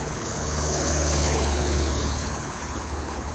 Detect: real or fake fake